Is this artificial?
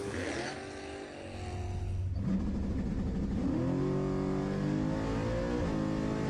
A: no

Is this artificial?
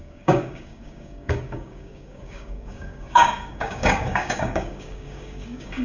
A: yes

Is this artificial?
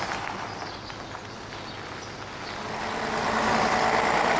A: no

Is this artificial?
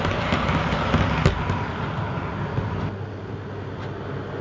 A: no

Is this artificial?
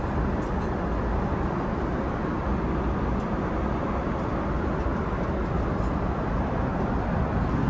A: no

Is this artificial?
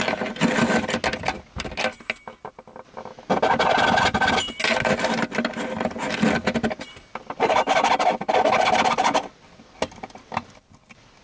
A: no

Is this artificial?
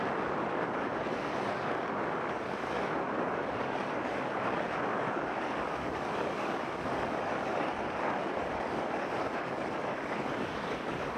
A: yes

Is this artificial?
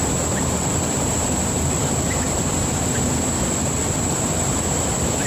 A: no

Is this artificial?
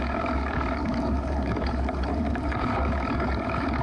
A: yes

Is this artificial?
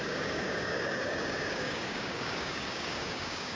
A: yes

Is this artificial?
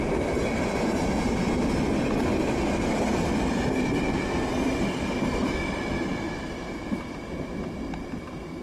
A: no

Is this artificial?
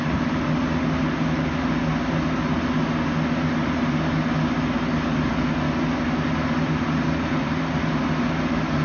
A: no